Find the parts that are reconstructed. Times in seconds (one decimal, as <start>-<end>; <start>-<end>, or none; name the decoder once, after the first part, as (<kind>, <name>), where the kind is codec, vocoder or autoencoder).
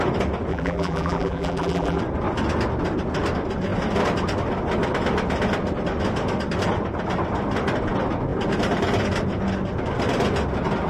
0.5-2.0 (vocoder, BigVGAN v2)